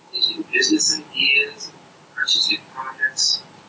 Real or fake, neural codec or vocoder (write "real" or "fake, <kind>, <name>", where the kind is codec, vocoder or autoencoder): real